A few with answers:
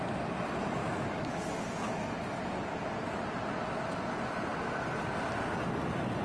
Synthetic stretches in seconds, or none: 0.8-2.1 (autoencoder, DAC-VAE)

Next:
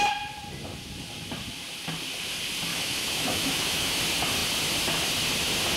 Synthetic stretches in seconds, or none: 2.7-4.0 (autoencoder, DAC-VAE)

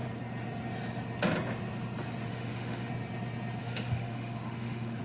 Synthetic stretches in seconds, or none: 2.3-2.9 (autoencoder, DAC-VAE); 3.6-5.0

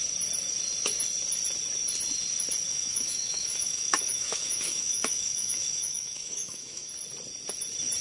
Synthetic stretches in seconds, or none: 2.7-6.9 (autoencoder, DAC-VAE)

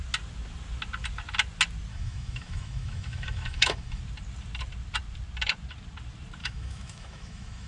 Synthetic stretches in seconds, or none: 1.9-4.0 (autoencoder, DAC-VAE); 6.4-7.7